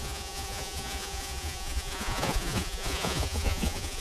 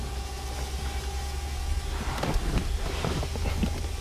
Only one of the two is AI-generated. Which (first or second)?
first